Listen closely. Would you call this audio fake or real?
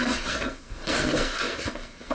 fake